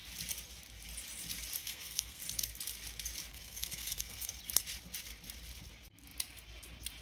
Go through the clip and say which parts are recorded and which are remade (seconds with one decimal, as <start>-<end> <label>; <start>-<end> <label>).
0.0-1.6 recorded; 1.6-2.2 remade; 2.2-3.3 recorded; 3.3-4.4 remade; 4.4-7.0 recorded